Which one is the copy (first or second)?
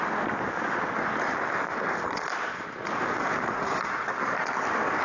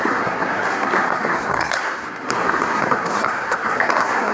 second